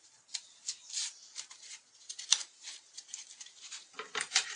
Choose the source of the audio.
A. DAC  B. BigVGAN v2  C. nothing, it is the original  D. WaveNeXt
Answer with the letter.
B